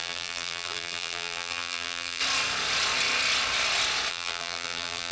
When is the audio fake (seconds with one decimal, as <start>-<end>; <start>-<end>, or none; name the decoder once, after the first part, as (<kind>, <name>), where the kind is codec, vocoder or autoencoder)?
0.0-2.2 (vocoder, BigVGAN v2); 4.1-5.1